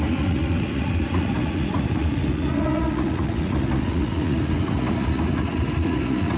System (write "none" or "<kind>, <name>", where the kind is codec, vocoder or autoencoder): vocoder, Vocos